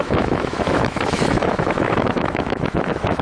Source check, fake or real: fake